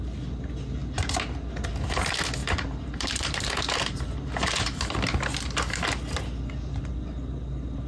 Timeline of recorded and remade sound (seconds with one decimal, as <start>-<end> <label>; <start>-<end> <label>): 0.0-2.4 recorded; 2.4-4.8 remade; 4.8-7.9 recorded

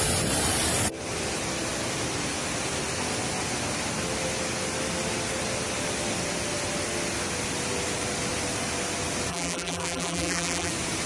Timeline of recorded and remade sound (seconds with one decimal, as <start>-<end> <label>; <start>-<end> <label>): 0.0-9.3 recorded; 9.3-10.7 remade; 10.7-11.1 recorded

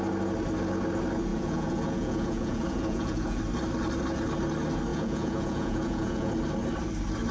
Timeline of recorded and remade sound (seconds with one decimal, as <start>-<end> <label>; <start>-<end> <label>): 0.0-1.3 recorded; 1.3-3.4 remade; 3.4-4.9 recorded; 4.9-6.3 remade; 6.3-7.3 recorded

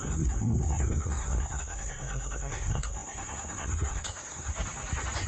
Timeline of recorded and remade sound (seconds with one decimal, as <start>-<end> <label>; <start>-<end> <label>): 0.0-4.5 remade; 4.5-5.3 recorded

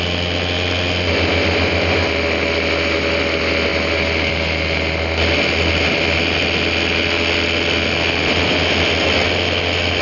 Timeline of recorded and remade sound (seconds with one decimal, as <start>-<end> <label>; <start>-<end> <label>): 0.0-10.0 recorded

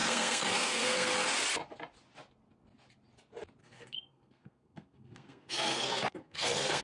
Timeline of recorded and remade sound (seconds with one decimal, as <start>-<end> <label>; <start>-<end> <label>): 0.0-1.1 remade; 1.1-3.6 recorded; 3.6-6.8 remade